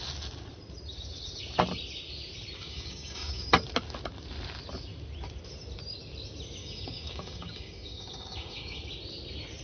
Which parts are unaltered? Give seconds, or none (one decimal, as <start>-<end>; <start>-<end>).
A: 0.0-2.6; 3.5-6.6; 8.8-9.6